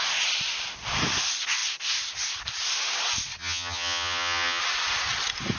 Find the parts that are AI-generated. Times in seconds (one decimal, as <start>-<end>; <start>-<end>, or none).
3.4-4.6